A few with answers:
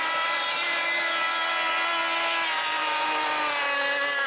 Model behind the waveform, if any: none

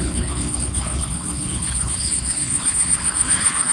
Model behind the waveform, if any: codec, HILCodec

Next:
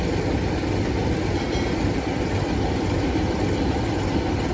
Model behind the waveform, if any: none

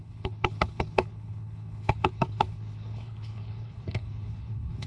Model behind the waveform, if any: codec, HILCodec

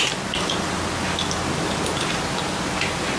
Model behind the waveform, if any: none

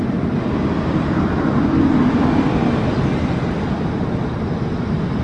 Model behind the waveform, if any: none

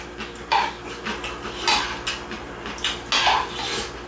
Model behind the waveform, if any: none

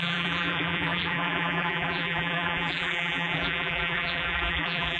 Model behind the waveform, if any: vocoder, BigVGAN v2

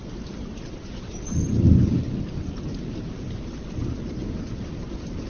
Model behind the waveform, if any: none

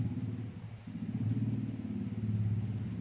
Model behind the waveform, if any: none